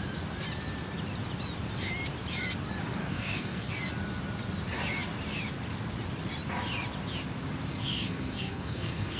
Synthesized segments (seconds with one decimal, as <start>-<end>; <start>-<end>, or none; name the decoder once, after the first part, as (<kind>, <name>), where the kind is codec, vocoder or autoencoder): 3.0-3.7 (codec, SNAC); 7.7-9.2